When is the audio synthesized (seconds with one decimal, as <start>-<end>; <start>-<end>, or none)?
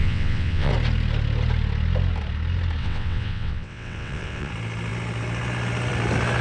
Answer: 0.0-0.7; 2.8-4.5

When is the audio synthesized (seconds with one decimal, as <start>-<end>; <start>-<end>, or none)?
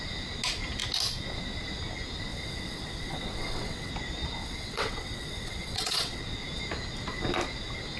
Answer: 2.3-3.9; 4.4-6.2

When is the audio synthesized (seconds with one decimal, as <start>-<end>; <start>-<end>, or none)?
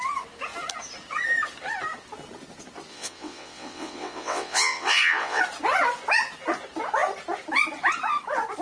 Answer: 2.9-5.4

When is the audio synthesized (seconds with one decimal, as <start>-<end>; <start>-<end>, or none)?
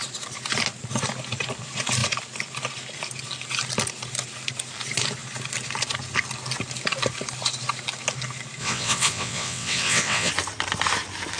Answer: 8.6-10.3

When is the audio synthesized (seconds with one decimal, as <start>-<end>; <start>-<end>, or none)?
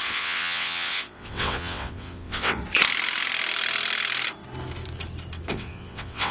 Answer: 0.0-2.6; 5.5-6.3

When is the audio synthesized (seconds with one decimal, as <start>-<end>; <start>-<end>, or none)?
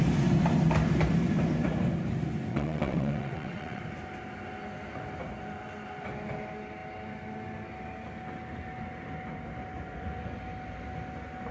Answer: 2.5-3.8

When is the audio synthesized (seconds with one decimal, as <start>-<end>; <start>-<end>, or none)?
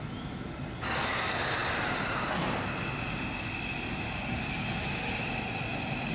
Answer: none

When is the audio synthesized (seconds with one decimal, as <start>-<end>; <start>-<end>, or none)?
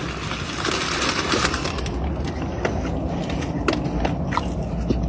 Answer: none